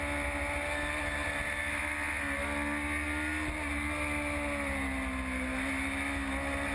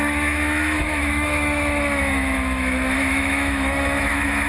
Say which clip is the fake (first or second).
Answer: second